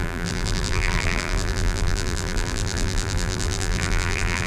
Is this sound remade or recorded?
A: remade